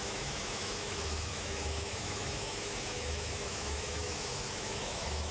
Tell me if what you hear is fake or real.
fake